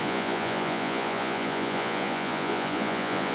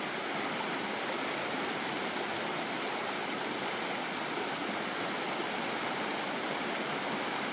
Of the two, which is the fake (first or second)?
first